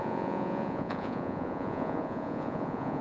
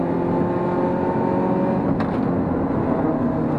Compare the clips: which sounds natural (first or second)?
second